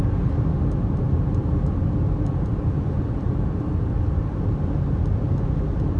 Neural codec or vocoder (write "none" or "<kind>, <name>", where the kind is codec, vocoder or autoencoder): none